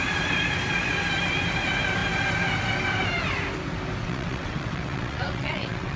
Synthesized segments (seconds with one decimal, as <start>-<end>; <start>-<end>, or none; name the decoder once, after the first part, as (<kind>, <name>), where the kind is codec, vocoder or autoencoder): 4.0-6.0 (vocoder, WaveNeXt)